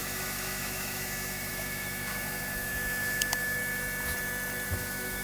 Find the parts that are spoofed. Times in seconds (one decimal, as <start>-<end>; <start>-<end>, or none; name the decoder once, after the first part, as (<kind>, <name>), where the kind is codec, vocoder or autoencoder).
0.0-3.6 (autoencoder, DAC-VAE); 4.7-5.2